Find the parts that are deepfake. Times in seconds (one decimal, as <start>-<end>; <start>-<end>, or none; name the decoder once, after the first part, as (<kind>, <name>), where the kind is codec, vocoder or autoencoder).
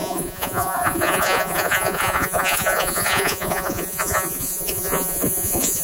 0.0-5.8 (vocoder, Vocos)